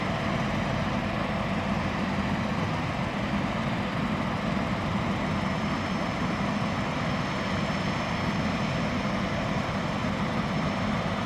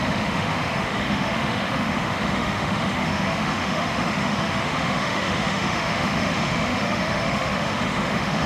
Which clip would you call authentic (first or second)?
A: first